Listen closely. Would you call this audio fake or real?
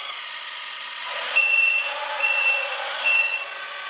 fake